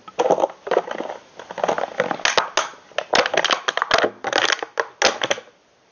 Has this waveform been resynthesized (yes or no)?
no